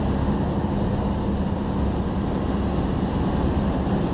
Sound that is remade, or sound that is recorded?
recorded